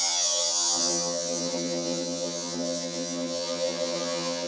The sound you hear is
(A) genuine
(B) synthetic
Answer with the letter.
B